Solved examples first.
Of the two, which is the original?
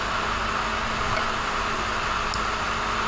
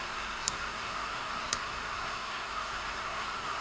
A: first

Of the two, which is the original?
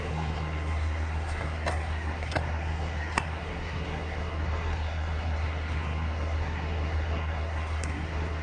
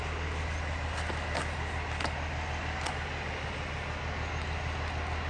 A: second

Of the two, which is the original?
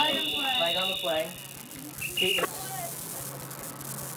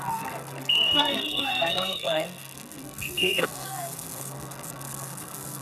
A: first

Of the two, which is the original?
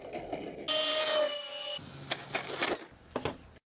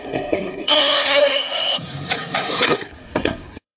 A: first